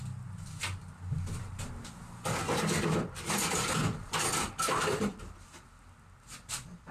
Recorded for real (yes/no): yes